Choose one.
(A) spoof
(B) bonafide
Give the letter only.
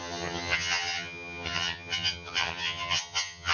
A